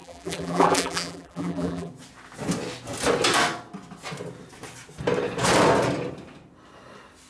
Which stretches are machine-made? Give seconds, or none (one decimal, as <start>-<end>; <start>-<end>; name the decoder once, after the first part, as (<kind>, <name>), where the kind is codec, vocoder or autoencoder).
0.0-1.9 (vocoder, BigVGAN v2)